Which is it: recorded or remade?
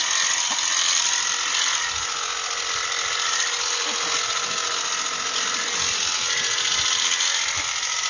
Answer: recorded